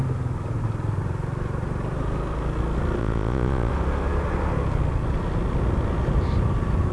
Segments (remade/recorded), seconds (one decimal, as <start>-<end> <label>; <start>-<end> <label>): 0.0-3.0 recorded; 3.0-3.7 remade; 3.7-6.9 recorded